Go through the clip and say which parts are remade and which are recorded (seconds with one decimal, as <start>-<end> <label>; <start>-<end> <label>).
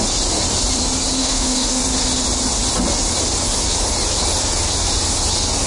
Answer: 0.0-1.2 recorded; 1.2-1.8 remade; 1.8-5.7 recorded